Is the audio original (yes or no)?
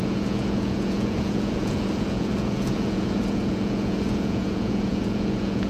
no